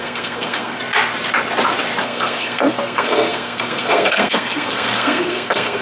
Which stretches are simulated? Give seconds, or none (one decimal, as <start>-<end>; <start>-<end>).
0.0-0.8; 2.0-5.8